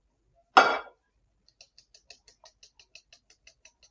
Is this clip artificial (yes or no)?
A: no